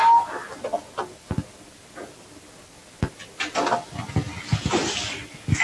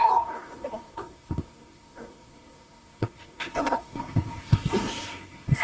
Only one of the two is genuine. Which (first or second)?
first